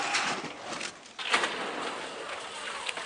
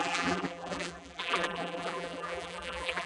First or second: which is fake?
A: second